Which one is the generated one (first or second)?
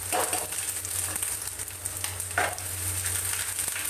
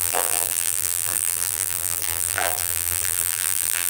second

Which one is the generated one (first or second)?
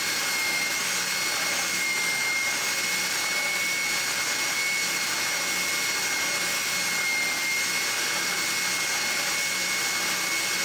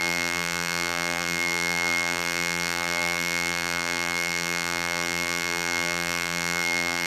second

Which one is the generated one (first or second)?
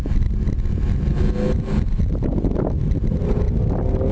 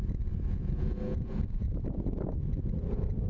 second